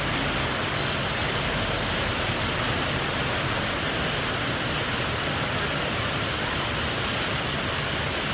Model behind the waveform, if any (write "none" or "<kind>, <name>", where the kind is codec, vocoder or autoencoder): none